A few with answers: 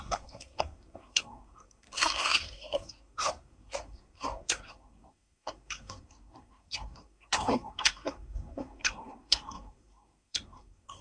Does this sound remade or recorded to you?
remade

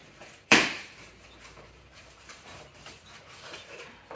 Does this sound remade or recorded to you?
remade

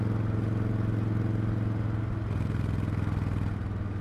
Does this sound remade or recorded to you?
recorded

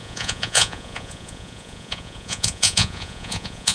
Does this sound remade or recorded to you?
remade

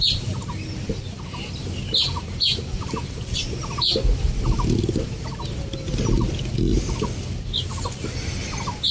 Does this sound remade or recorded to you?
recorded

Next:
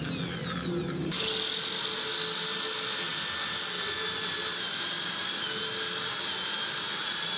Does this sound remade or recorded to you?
recorded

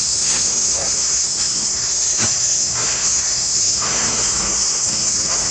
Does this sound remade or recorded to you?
remade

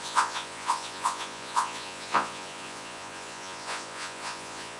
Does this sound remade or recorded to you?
remade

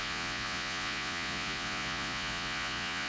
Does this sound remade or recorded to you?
remade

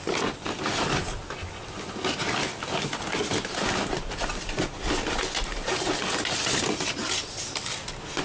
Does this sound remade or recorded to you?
recorded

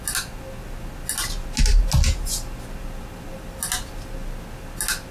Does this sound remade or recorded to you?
recorded